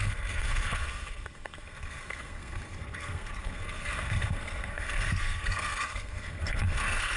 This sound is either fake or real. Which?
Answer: fake